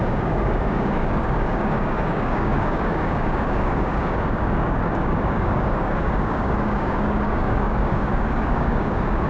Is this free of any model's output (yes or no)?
no